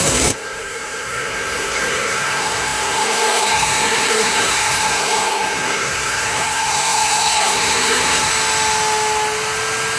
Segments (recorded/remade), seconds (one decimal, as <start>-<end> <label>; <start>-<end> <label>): 0.0-8.3 remade; 8.3-10.0 recorded